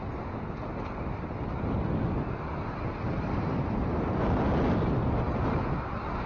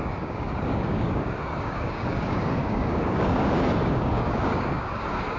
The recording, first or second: first